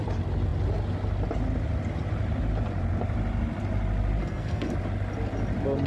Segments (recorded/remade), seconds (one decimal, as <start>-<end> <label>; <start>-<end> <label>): 0.0-4.2 recorded; 4.2-4.7 remade; 4.7-5.9 recorded